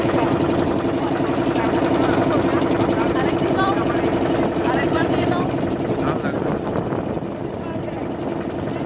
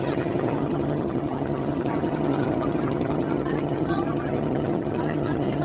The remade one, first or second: second